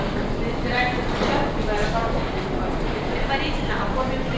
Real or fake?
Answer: real